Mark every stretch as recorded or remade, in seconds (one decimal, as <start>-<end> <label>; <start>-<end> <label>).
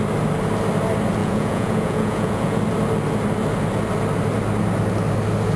0.0-1.2 recorded; 1.2-2.6 remade; 2.6-5.6 recorded